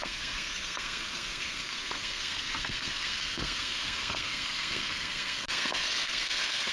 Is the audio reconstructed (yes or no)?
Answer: yes